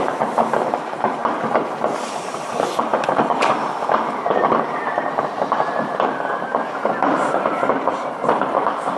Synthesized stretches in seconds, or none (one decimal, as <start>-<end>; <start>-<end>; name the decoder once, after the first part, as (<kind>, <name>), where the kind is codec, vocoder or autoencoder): 0.0-1.2 (vocoder, BigVGAN v2); 2.1-9.0